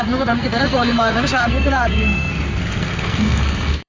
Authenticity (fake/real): fake